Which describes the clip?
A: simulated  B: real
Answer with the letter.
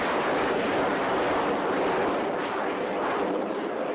B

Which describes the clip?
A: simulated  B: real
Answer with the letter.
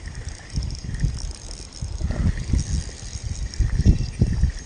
B